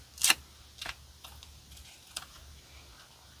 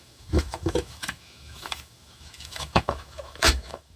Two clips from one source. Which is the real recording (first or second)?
first